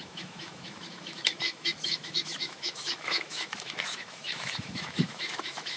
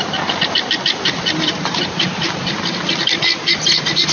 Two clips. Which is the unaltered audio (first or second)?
second